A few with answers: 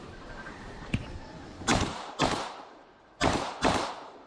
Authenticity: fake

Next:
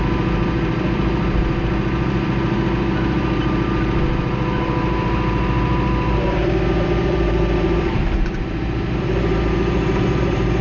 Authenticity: fake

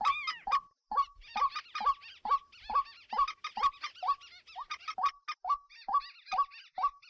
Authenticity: real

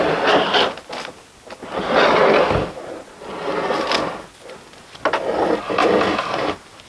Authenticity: real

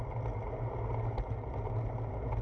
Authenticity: real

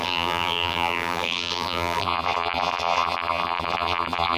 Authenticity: fake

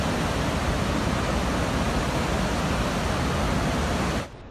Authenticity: real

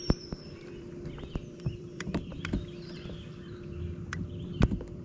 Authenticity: fake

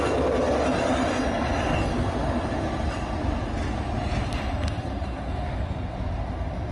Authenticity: real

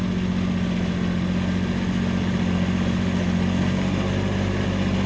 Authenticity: real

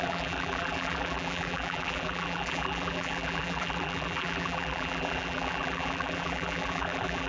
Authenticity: fake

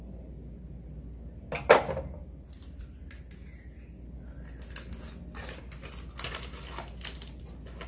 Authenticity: real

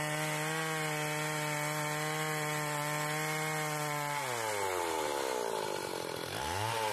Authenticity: real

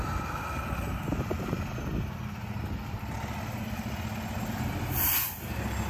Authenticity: real